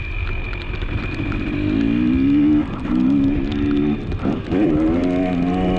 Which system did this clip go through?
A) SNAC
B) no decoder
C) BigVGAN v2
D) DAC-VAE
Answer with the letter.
B